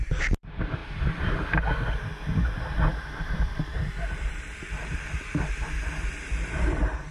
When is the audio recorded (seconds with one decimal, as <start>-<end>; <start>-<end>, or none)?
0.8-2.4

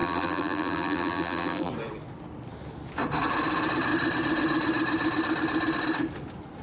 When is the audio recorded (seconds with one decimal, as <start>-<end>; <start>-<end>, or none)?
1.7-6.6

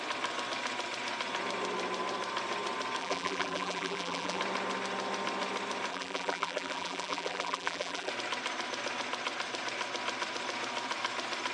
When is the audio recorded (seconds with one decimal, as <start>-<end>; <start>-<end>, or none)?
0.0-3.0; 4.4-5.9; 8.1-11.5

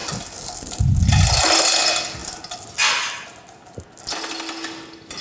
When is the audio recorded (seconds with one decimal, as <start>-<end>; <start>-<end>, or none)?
0.0-5.2

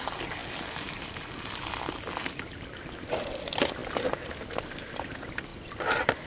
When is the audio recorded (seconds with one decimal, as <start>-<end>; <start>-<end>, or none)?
0.0-5.5

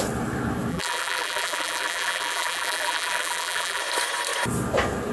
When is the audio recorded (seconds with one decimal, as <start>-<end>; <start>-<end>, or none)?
0.0-0.7; 3.8-5.1